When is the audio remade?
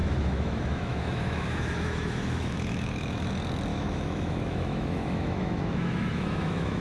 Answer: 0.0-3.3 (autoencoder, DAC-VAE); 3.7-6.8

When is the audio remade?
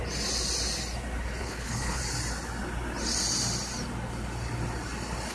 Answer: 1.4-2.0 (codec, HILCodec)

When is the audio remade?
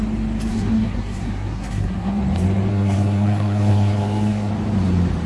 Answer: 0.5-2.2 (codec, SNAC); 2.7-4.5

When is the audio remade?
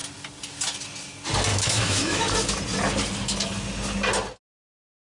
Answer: 1.5-2.2 (autoencoder, DAC-VAE)